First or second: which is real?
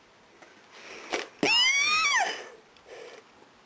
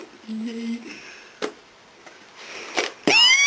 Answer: first